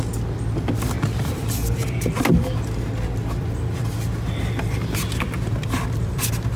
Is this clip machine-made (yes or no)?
no